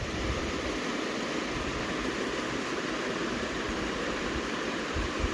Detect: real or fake fake